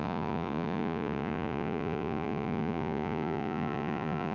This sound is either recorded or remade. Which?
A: remade